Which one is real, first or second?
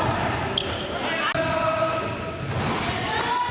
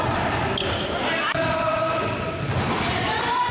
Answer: first